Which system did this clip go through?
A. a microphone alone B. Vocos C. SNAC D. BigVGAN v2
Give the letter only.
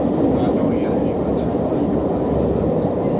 A